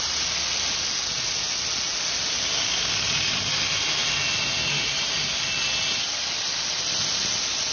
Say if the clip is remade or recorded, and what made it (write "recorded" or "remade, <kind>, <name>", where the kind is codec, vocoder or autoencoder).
recorded